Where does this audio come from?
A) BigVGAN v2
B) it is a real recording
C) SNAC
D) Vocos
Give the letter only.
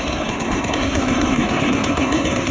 C